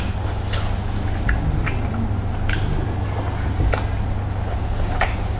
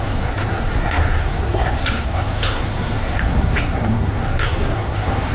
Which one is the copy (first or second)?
second